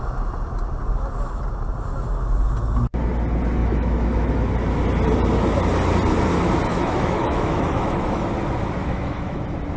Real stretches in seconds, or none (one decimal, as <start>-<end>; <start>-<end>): 0.0-3.6; 4.3-6.7; 8.3-8.8; 9.4-9.8